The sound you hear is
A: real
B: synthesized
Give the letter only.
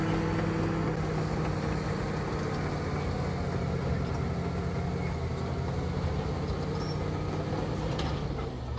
A